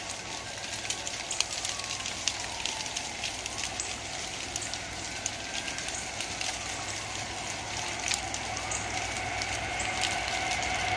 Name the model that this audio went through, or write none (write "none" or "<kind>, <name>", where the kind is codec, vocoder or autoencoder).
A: none